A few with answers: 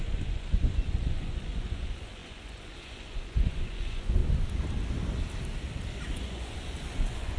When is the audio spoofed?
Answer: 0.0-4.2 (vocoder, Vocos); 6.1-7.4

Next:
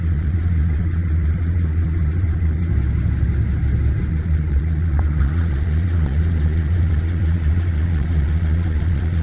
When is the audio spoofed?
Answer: 0.0-2.7 (vocoder, Vocos); 4.1-9.2

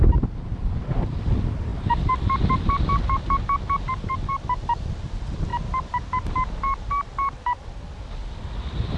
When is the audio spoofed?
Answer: none

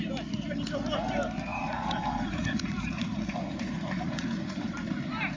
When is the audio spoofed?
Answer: 1.5-4.7 (vocoder, Vocos)

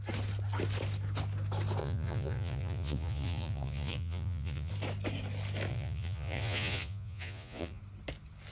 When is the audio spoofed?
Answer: 1.8-4.7 (vocoder, Vocos); 5.7-7.8

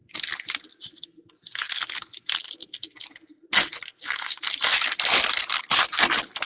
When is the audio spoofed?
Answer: none

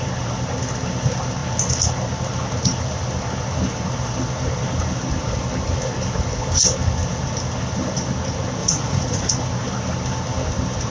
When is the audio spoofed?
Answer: 8.6-9.3 (vocoder, Vocos)

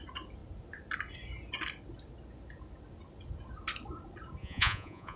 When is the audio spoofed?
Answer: 4.4-5.2 (vocoder, Vocos)